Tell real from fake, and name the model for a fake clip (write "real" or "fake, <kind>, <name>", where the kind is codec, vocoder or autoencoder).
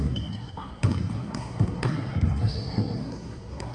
fake, codec, SNAC